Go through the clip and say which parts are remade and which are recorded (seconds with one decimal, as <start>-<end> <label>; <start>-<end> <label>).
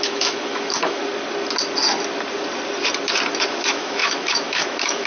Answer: 0.0-1.0 remade; 1.0-3.5 recorded; 3.5-5.1 remade